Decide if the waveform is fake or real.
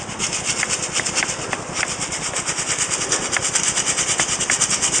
real